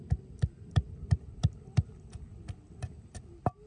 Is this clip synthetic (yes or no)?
no